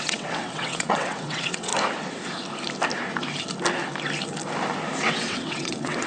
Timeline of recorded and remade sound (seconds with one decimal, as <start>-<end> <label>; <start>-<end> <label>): 0.0-1.7 remade; 1.7-5.0 recorded; 5.0-6.1 remade